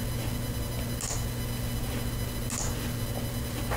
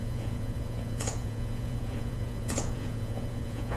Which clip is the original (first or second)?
first